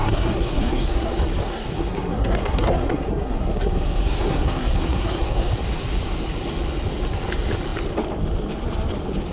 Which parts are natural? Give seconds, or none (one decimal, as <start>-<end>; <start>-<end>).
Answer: 1.1-1.5; 5.5-9.3